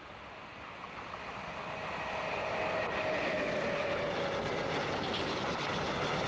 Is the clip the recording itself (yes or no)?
yes